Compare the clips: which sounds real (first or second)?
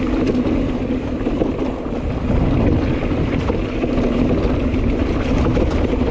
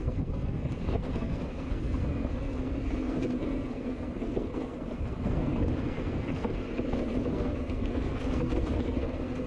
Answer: first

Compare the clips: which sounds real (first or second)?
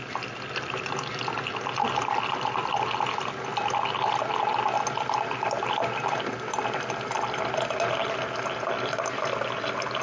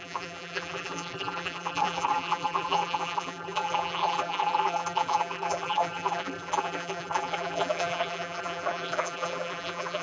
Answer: first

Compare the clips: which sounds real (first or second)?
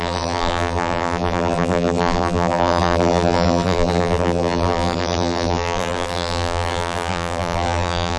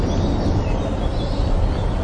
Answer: second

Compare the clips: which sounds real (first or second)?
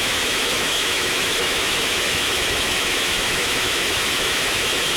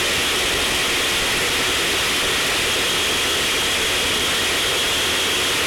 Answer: second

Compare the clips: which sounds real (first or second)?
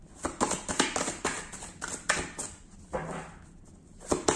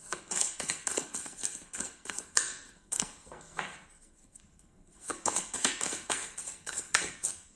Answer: first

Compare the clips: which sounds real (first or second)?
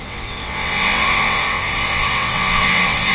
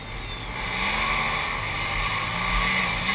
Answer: second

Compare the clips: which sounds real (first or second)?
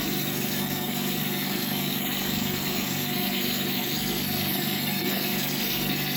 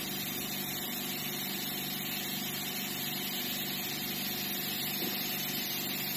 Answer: second